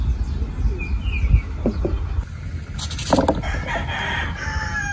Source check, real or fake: real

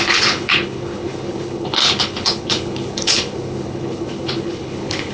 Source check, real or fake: fake